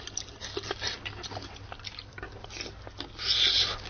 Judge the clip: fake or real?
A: real